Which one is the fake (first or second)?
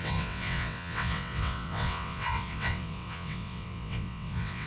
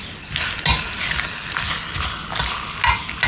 first